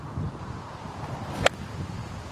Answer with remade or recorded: recorded